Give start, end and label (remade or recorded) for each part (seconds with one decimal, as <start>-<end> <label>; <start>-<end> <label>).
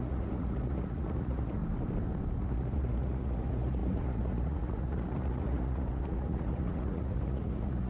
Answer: 0.0-1.6 remade; 1.6-2.4 recorded; 2.4-7.9 remade